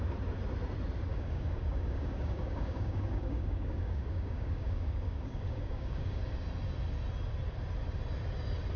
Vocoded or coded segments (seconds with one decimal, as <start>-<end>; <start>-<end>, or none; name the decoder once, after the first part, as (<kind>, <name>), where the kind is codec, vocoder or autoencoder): 1.1-6.2 (codec, DAC)